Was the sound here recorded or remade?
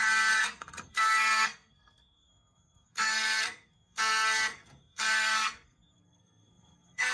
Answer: remade